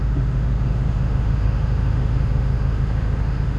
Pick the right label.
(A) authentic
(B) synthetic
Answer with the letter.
B